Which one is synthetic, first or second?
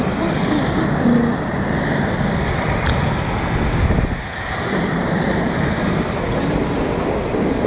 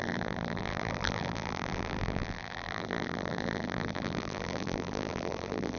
second